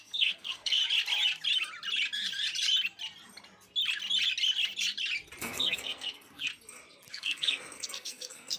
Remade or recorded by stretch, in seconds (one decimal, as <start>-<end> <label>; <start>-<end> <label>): 0.0-0.8 remade; 0.8-5.4 recorded; 5.4-6.5 remade; 6.5-7.1 recorded; 7.1-8.6 remade